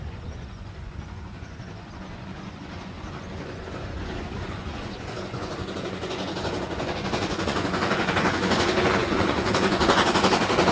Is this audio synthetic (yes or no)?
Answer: yes